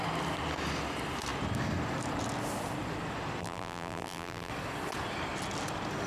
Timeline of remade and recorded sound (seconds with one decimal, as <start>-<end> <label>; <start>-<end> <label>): 0.0-3.4 recorded; 3.4-4.5 remade; 4.5-6.1 recorded